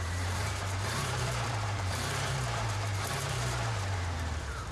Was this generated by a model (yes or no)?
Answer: yes